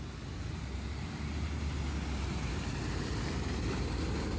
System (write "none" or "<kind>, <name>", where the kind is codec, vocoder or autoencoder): none